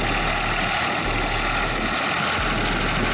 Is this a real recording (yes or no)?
yes